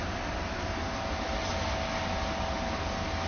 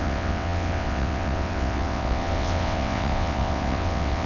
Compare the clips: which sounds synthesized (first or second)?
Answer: second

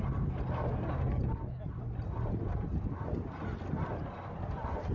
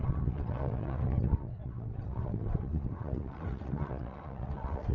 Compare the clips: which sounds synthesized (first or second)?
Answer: second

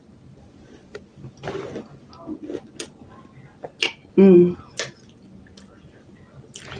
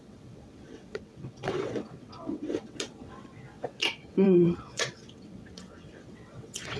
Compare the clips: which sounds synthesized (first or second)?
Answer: second